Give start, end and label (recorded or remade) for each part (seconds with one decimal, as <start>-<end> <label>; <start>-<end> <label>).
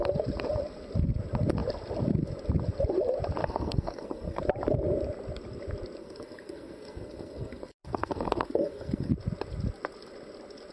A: 0.0-3.4 recorded; 3.4-4.4 remade; 4.4-6.0 recorded; 6.0-9.1 remade; 9.1-10.7 recorded